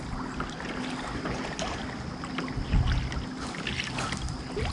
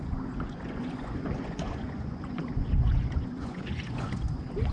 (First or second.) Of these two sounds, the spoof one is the second